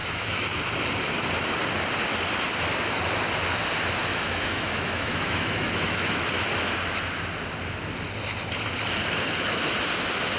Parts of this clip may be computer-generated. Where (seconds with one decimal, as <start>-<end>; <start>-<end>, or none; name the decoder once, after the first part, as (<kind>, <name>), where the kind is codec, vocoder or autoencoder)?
0.0-0.6 (autoencoder, DAC-VAE); 4.1-6.2